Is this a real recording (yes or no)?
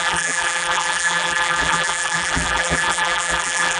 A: no